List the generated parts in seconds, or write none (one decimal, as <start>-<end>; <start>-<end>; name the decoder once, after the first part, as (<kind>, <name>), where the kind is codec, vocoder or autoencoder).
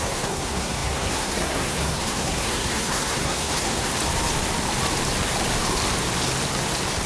0.0-3.9 (codec, SNAC)